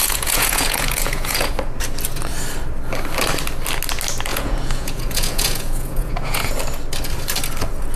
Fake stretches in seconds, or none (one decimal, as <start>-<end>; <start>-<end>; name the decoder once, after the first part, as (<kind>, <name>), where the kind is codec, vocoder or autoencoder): 0.0-1.5 (vocoder, Vocos); 4.3-6.5